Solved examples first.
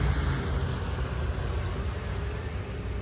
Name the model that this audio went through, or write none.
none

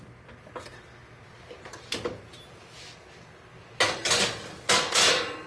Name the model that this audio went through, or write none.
none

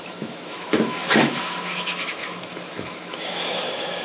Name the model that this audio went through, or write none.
autoencoder, DAC-VAE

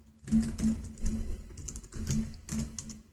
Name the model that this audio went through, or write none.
none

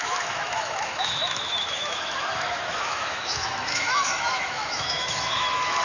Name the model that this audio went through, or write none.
autoencoder, DAC-VAE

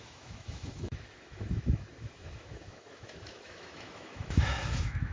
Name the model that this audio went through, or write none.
autoencoder, DAC-VAE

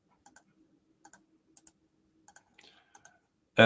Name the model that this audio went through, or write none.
none